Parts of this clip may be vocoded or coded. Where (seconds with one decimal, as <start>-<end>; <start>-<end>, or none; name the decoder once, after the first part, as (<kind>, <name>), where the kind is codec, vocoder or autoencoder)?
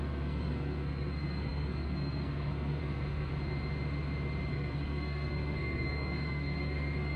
0.0-3.3 (codec, SNAC); 4.5-7.2